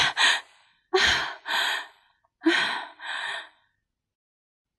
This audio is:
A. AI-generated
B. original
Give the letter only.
B